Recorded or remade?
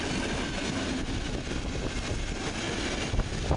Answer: recorded